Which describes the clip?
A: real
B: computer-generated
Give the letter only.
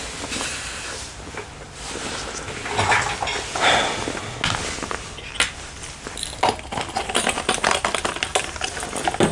A